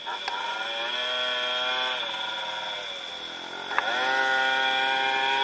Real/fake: real